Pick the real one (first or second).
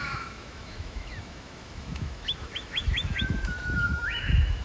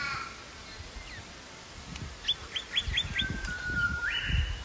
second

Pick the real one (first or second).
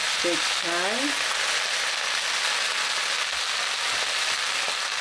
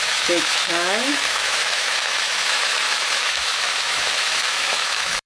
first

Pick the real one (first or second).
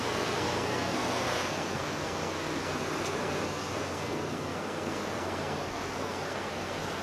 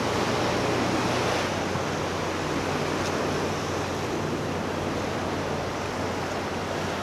second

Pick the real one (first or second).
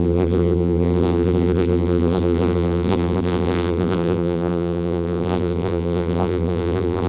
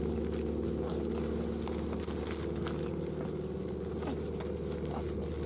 second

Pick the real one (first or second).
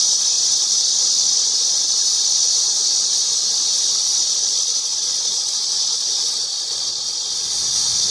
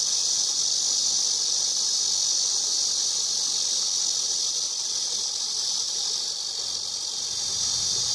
second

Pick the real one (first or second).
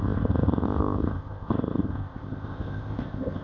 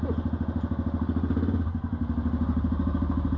second